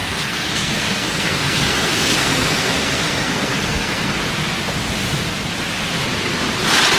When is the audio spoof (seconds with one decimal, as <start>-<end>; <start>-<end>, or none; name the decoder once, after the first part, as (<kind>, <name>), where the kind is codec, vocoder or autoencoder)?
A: 0.0-4.2 (codec, SNAC)